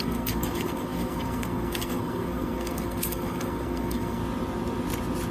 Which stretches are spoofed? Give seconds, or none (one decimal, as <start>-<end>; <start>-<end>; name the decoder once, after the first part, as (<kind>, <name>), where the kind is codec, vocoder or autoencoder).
0.0-4.2 (codec, SNAC)